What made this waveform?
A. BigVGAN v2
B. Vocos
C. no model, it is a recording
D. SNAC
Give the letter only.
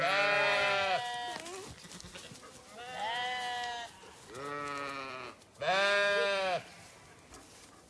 C